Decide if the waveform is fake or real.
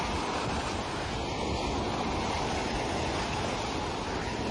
real